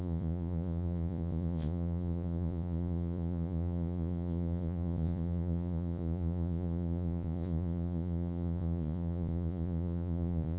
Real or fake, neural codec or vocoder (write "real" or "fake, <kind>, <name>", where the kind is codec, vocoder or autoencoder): fake, vocoder, Vocos